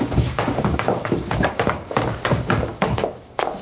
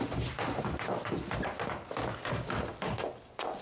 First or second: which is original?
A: second